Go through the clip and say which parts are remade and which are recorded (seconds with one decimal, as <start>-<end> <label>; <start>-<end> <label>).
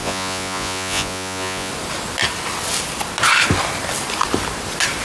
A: 0.0-1.7 remade; 1.7-5.0 recorded